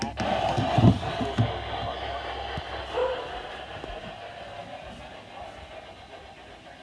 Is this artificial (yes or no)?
no